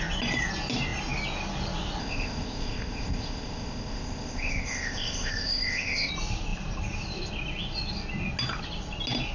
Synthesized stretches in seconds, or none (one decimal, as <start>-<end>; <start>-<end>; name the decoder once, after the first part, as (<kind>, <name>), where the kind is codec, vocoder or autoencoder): 2.0-6.1 (codec, ZipCodec)